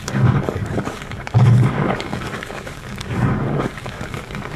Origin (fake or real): fake